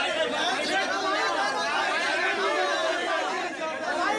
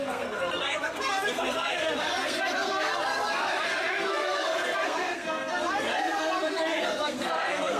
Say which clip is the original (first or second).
first